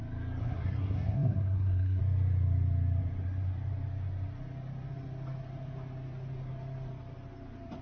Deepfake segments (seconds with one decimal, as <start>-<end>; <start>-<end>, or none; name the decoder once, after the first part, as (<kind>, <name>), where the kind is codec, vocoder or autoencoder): 0.4-2.0 (codec, SNAC)